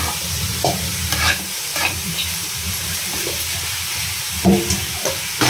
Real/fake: fake